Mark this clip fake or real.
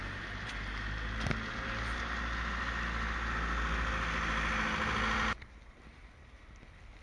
real